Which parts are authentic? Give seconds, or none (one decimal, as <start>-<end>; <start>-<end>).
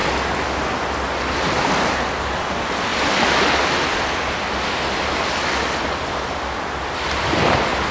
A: 0.0-7.9